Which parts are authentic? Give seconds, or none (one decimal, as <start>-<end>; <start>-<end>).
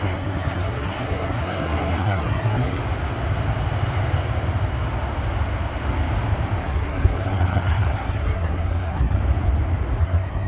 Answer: 2.8-6.6; 9.2-10.0